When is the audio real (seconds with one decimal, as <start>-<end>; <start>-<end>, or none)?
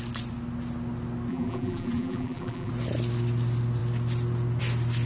0.0-1.3; 2.7-5.1